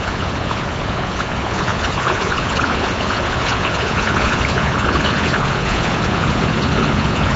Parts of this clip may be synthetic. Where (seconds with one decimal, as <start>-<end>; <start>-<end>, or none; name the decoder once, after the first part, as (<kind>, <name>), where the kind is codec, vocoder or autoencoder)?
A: 0.0-7.4 (vocoder, Vocos)